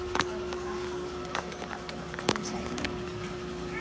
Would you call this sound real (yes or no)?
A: no